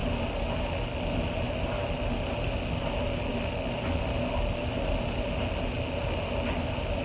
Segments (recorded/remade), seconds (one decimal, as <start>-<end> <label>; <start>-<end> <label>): 0.0-7.0 recorded